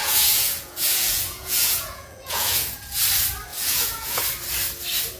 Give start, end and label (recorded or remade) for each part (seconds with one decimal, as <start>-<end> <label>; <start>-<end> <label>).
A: 0.0-3.1 remade; 3.1-3.5 recorded; 3.5-4.2 remade; 4.2-5.2 recorded